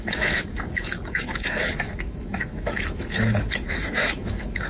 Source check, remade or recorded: remade